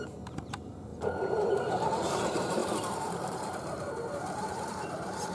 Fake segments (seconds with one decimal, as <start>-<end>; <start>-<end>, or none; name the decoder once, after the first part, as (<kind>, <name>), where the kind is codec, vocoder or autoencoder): 0.0-0.9 (vocoder, BigVGAN v2); 1.5-5.3